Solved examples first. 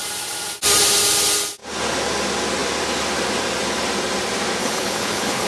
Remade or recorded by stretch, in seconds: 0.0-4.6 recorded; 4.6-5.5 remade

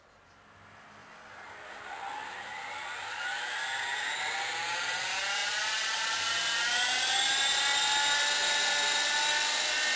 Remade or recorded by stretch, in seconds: 0.0-10.0 recorded

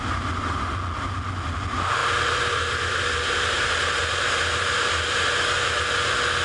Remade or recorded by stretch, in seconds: 0.0-6.4 recorded

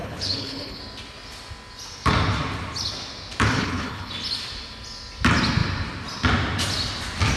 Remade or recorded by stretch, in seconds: 0.0-0.8 remade; 0.8-3.5 recorded; 3.5-4.1 remade; 4.1-7.4 recorded

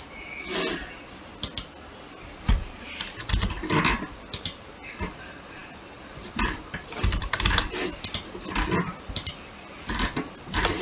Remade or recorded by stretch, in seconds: 0.0-10.8 recorded

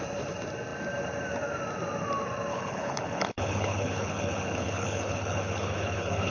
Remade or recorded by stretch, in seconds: 0.0-2.5 recorded; 2.5-6.3 remade